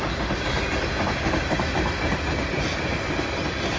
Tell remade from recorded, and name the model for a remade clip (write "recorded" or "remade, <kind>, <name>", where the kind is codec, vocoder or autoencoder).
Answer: recorded